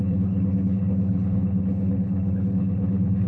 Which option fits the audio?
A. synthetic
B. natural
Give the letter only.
A